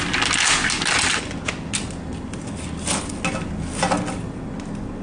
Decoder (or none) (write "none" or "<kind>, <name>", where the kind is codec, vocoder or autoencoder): none